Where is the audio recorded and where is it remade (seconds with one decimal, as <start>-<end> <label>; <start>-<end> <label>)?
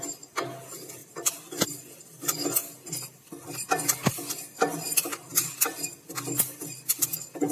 0.0-7.5 recorded